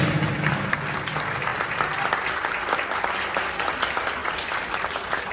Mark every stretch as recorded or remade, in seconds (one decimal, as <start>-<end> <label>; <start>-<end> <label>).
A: 0.0-4.2 recorded; 4.2-5.3 remade